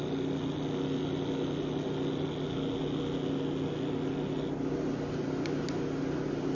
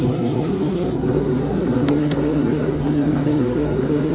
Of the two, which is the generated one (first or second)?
second